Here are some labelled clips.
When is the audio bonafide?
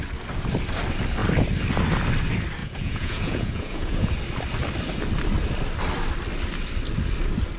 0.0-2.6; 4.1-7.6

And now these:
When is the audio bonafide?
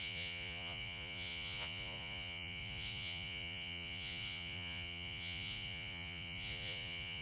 none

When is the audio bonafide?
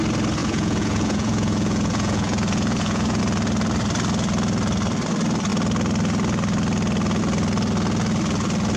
0.0-0.4; 3.2-8.8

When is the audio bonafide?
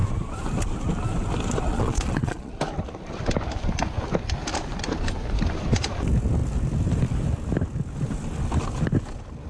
0.0-1.7; 2.5-9.5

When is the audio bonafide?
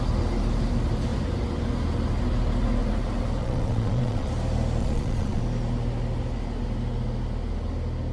0.0-3.4; 4.3-4.8; 5.4-8.1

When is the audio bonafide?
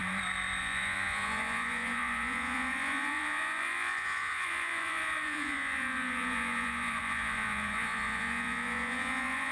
0.0-0.6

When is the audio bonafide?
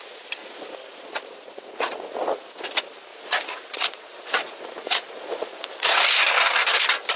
0.0-0.4; 2.6-3.1; 6.0-7.2